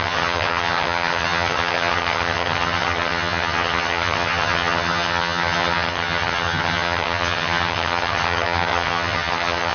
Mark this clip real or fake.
fake